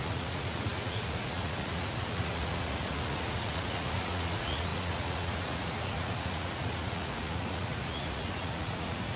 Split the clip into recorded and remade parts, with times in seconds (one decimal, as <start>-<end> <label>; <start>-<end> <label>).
0.0-9.2 remade